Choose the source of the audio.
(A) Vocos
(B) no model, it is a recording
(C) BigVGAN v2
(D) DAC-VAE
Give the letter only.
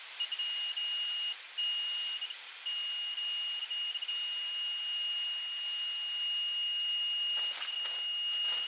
B